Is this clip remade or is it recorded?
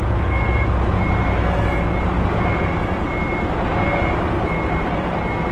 recorded